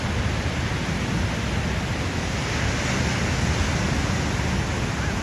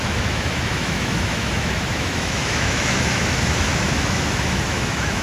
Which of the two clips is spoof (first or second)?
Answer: second